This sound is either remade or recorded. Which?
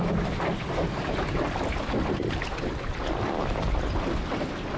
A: recorded